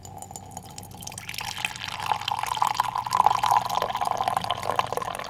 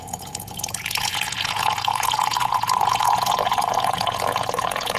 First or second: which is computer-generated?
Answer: second